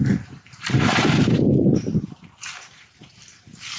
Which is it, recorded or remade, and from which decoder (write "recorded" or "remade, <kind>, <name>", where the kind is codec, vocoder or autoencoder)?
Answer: remade, vocoder, BigVGAN v2